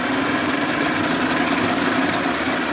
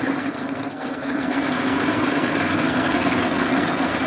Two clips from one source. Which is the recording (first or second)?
first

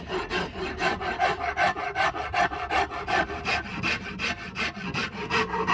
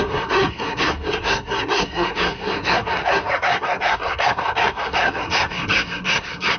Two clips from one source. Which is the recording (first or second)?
first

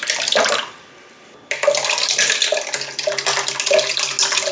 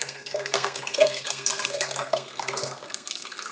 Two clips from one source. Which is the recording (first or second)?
first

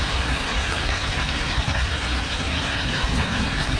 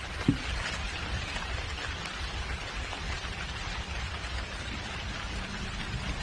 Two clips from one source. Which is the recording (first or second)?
second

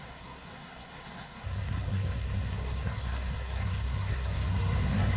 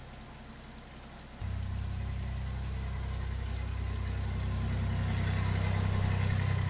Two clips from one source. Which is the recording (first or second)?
second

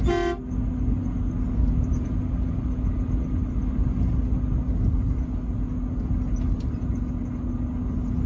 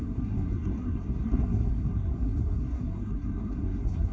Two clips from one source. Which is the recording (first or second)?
first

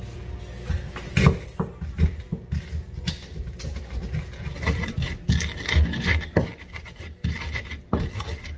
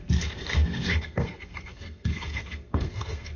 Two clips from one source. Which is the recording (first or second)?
first